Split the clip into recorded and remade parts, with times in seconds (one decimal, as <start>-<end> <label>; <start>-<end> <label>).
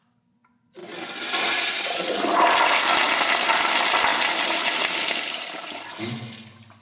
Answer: 0.0-6.8 recorded